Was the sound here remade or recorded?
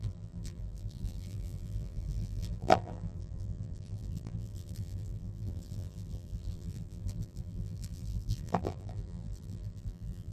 remade